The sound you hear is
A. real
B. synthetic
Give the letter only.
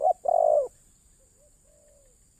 A